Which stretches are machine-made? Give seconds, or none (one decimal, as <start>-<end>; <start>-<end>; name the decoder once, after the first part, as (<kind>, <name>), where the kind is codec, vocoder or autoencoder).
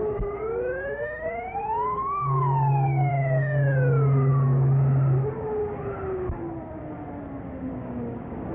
1.6-3.1 (codec, DAC); 7.7-8.5